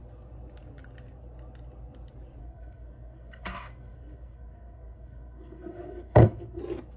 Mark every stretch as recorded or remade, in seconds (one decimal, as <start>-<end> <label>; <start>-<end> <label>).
0.0-2.4 recorded; 2.4-6.6 remade; 6.6-7.0 recorded